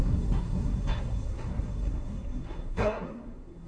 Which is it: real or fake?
fake